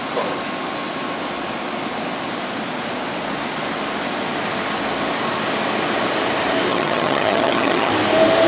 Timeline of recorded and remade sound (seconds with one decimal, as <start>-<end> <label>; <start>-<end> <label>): 0.0-6.7 recorded; 6.7-7.9 remade; 7.9-8.5 recorded